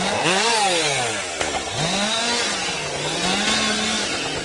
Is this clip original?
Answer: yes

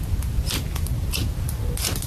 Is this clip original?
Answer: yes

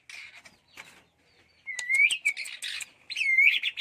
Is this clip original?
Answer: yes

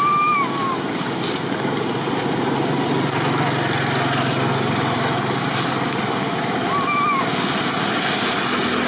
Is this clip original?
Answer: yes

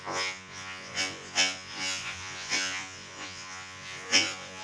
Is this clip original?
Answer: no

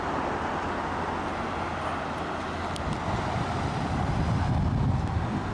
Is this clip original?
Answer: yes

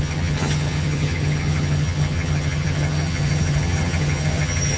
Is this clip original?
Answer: no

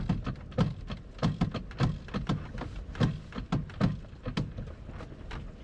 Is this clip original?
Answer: yes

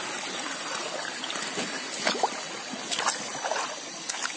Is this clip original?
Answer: yes